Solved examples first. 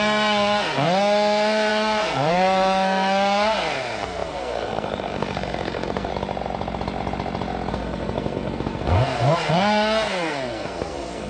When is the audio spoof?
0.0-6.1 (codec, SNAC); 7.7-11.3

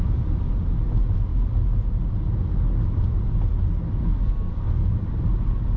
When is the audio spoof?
4.0-4.9 (codec, SNAC)

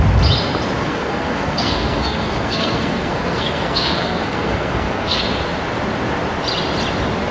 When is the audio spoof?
0.8-5.2 (codec, SNAC)

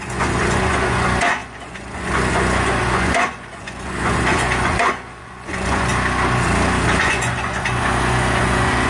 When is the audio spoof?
0.0-5.9 (vocoder, Vocos); 7.0-8.9

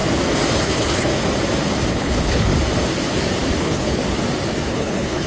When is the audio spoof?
0.6-1.1 (codec, HILCodec); 1.9-2.5; 3.6-4.0; 4.7-5.3

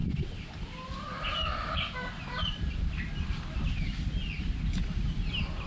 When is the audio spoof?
none